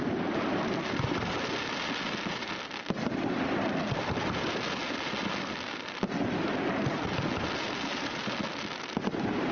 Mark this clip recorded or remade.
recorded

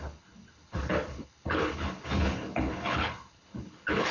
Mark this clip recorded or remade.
remade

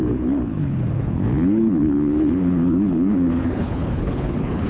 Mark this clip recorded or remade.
remade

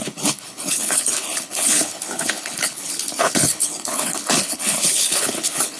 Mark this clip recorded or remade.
remade